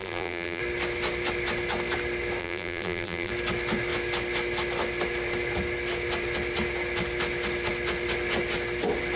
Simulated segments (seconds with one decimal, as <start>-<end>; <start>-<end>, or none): 0.0-0.6; 2.4-3.3